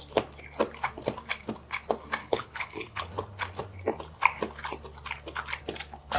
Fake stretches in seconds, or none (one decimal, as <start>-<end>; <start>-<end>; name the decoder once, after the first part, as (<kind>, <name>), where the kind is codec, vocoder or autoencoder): 2.2-3.1 (codec, HILCodec)